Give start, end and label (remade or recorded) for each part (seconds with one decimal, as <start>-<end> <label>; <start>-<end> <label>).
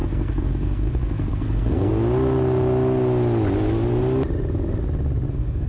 0.0-1.9 remade; 1.9-5.3 recorded; 5.3-5.7 remade